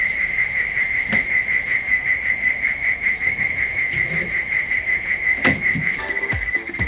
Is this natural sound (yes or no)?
no